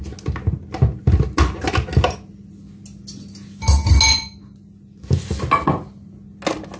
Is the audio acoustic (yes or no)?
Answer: yes